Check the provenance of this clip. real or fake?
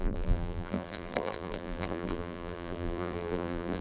fake